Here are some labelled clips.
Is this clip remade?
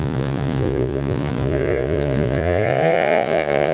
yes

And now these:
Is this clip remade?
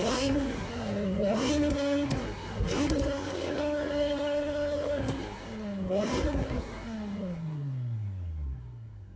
yes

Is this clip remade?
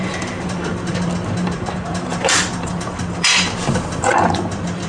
yes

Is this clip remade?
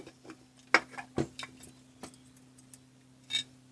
no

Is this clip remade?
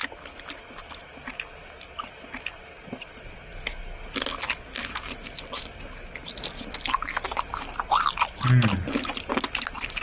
no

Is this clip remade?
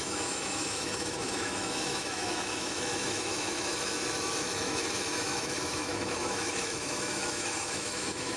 yes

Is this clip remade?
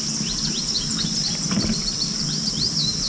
no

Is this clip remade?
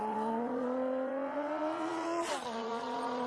yes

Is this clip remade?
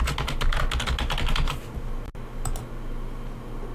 no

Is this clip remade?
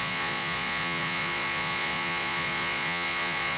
yes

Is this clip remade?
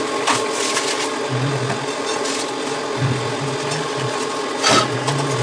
no